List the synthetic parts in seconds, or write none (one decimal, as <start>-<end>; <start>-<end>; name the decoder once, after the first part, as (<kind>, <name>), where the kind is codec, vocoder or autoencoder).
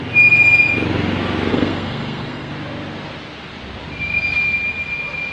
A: 1.5-2.5 (codec, SNAC)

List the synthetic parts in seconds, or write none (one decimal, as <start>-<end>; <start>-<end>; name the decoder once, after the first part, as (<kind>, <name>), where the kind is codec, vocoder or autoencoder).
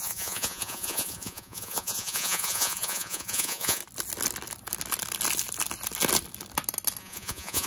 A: 0.0-3.8 (vocoder, Vocos); 7.0-7.7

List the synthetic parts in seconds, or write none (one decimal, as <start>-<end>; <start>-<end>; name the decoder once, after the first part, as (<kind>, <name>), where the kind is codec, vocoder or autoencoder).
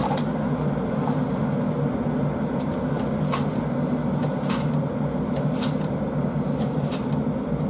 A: none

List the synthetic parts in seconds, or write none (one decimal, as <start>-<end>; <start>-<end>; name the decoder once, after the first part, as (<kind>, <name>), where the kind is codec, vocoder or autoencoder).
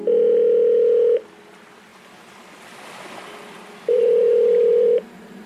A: 1.9-5.0 (vocoder, BigVGAN v2)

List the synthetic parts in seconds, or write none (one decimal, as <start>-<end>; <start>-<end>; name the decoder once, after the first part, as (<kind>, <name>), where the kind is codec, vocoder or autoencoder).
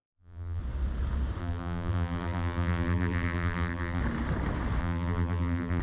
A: 0.0-0.6 (vocoder, BigVGAN v2); 1.4-4.0; 4.8-5.8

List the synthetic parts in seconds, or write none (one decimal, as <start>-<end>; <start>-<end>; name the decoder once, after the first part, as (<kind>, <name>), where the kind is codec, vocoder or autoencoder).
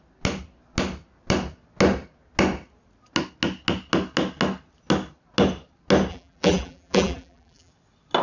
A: 6.1-7.7 (vocoder, BigVGAN v2)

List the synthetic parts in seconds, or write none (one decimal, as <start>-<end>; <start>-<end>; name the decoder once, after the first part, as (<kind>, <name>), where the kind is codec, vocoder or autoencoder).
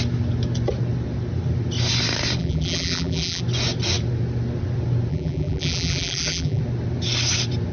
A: 2.4-3.4 (vocoder, BigVGAN v2); 5.1-6.6